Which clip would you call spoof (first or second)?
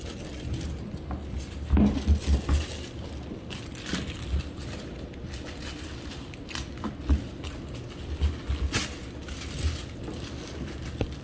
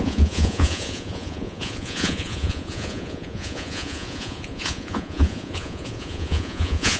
second